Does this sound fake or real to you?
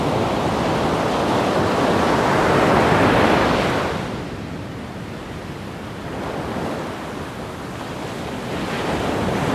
real